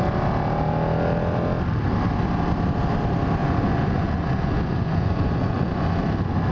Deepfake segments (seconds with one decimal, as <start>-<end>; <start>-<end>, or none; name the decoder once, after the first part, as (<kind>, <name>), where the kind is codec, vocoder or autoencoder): 3.4-6.0 (vocoder, Vocos)